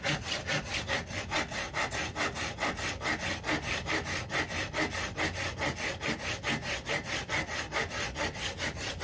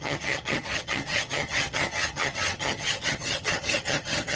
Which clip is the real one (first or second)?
first